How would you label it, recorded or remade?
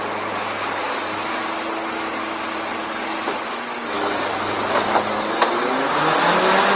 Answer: recorded